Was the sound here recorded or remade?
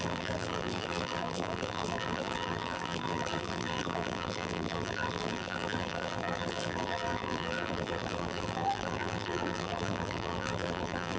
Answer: remade